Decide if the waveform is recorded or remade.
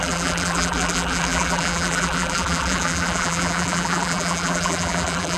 remade